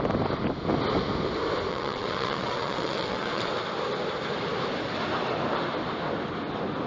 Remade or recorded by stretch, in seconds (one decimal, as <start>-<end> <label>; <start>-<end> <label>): 0.0-1.7 recorded; 1.7-3.5 remade; 3.5-6.9 recorded